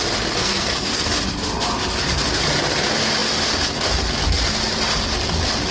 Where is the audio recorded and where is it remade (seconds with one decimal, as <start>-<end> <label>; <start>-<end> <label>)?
0.0-0.4 recorded; 0.4-1.1 remade; 1.1-5.7 recorded